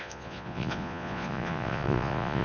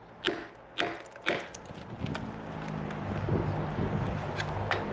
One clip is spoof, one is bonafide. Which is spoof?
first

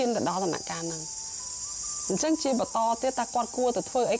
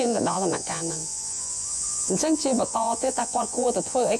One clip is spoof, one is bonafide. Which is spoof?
second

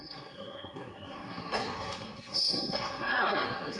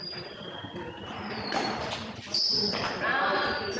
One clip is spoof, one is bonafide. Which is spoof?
first